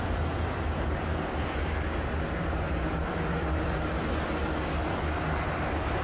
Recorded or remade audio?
remade